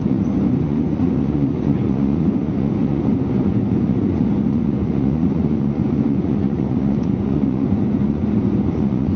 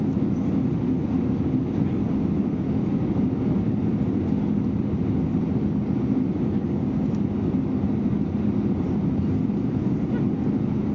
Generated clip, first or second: first